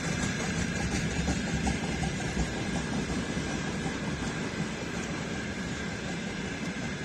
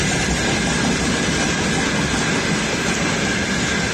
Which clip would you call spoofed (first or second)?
first